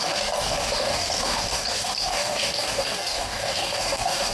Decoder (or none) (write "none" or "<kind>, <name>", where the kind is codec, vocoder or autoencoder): codec, DAC